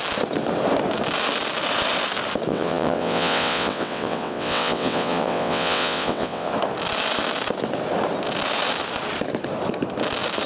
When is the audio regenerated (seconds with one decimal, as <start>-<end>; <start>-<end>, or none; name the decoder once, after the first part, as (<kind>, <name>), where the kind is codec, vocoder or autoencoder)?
2.5-6.5 (vocoder, WaveNeXt)